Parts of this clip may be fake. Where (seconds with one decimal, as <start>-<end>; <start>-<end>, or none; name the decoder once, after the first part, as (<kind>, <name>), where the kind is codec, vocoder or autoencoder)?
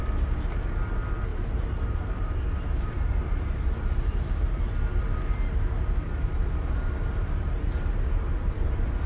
1.3-4.6 (vocoder, BigVGAN v2); 6.4-9.1